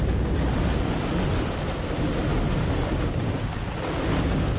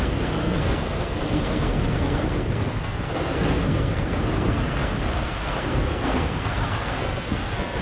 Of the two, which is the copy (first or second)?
second